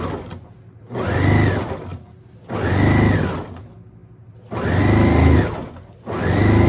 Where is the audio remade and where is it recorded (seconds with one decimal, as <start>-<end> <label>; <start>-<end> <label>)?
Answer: 0.0-6.7 recorded